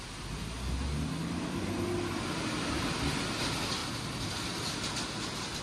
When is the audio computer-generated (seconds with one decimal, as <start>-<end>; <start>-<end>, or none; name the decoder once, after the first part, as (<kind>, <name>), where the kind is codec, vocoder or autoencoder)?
none